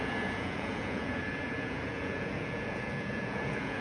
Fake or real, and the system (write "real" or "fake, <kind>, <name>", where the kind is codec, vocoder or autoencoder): fake, vocoder, Vocos